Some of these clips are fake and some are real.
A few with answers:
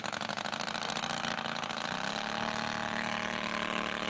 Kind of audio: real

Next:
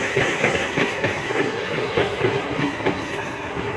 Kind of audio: fake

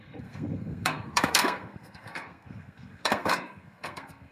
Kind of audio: fake